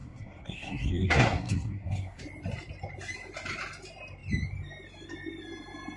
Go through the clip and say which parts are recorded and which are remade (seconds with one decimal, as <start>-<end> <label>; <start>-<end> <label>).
0.0-2.2 remade; 2.2-6.0 recorded